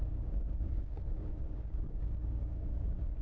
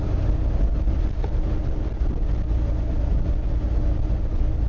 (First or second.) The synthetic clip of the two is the first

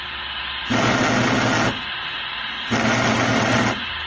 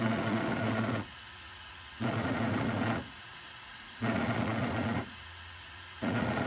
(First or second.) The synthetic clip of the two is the second